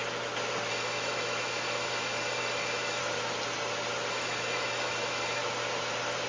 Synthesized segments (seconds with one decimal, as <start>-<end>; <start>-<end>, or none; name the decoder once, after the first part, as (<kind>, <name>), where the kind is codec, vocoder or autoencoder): 0.7-3.0 (autoencoder, DAC-VAE); 4.1-5.4